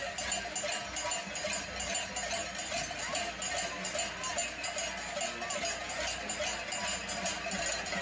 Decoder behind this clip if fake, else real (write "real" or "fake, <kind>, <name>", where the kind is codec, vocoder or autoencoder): real